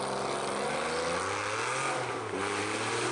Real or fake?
real